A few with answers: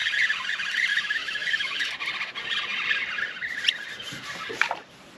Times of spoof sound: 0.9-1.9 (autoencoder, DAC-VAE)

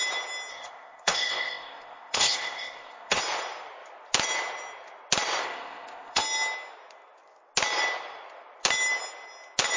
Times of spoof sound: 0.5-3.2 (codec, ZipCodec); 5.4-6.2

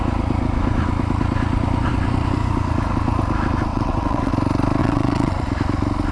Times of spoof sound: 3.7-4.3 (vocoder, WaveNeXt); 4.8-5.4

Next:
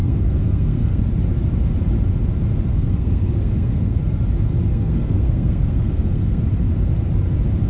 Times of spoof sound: 0.0-1.0 (codec, SNAC); 2.7-4.0; 4.7-6.4